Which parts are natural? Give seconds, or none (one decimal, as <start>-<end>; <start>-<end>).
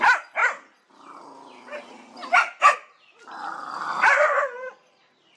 0.0-0.4; 1.2-1.7; 3.2-3.9; 5.0-5.4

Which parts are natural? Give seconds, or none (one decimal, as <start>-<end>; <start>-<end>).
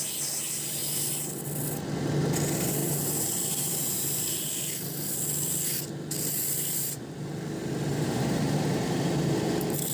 0.0-2.8; 4.5-7.9; 8.4-9.9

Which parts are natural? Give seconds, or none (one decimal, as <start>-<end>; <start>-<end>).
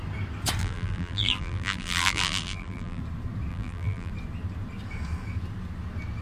0.0-0.6; 3.0-3.5; 4.1-6.2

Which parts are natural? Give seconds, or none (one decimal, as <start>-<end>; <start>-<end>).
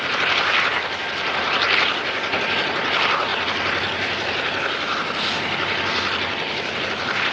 3.3-6.8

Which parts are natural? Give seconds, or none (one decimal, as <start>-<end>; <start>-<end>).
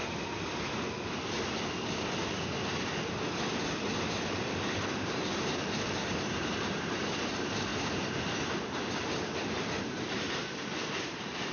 0.0-4.9